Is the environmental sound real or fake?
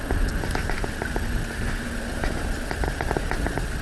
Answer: real